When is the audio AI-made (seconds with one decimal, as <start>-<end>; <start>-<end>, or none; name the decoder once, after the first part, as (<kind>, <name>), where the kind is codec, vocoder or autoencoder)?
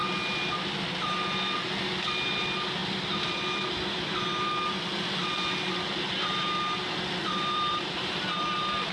7.2-8.1 (vocoder, BigVGAN v2)